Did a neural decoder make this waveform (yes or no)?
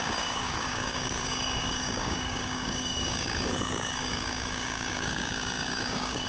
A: yes